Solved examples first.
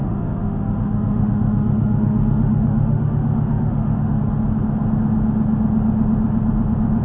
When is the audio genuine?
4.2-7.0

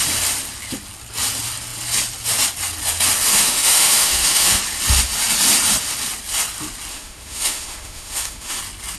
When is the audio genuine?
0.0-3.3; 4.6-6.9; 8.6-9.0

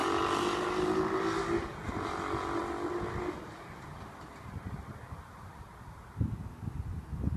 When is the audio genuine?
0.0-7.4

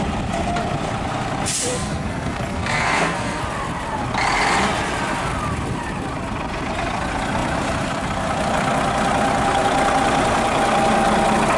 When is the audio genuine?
0.0-1.7; 3.4-11.6